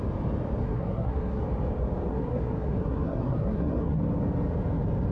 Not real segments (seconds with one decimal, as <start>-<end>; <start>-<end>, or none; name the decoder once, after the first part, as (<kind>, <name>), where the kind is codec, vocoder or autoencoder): 0.6-1.4 (codec, SNAC); 2.1-4.0